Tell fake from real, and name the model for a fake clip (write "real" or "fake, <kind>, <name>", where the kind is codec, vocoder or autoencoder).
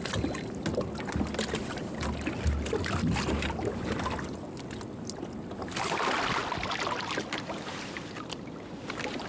real